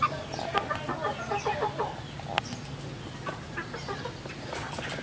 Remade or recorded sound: recorded